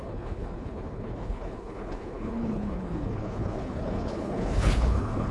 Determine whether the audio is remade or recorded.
remade